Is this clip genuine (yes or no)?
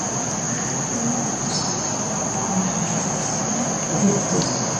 yes